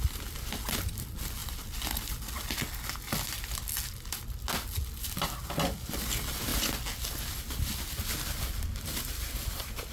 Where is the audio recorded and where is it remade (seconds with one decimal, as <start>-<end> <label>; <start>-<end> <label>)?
0.0-9.9 recorded